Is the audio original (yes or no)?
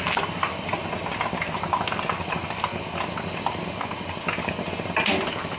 yes